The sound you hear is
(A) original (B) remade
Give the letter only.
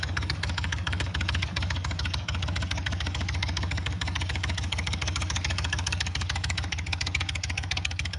B